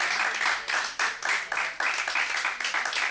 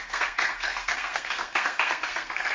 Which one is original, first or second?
first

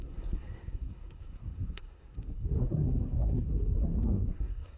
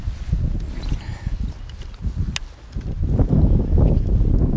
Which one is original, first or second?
second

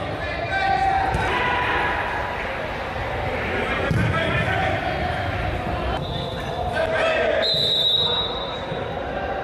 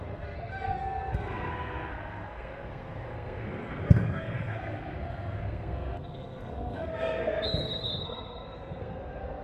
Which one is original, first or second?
first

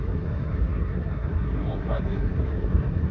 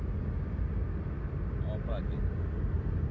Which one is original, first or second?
second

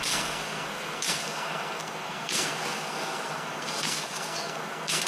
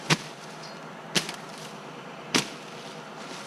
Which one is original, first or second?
second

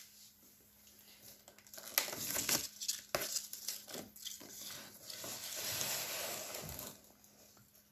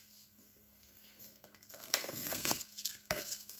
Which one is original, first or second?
first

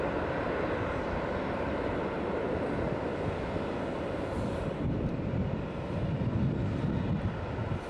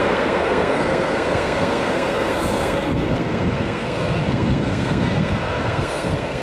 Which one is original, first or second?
first